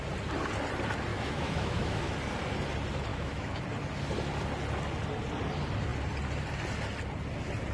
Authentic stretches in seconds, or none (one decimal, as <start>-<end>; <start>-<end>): 0.0-1.1; 2.1-3.1; 3.6-7.7

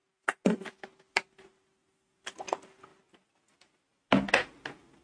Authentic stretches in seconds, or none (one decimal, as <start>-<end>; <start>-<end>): 0.0-5.0

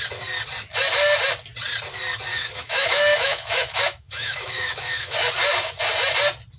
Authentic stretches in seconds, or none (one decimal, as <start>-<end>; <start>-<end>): 0.0-2.3; 5.2-6.6

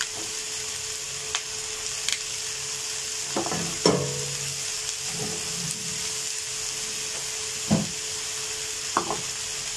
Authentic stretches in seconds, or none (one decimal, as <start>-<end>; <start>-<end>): 0.0-9.8

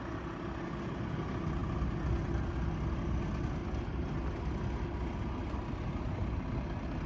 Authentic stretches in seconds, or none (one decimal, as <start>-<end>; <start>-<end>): 0.0-3.6; 4.5-7.1